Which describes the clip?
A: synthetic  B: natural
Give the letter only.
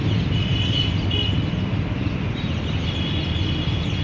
B